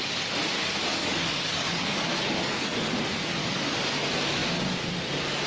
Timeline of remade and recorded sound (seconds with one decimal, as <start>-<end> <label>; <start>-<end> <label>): 0.0-0.9 recorded; 0.9-2.9 remade; 2.9-3.4 recorded; 3.4-4.0 remade; 4.0-5.5 recorded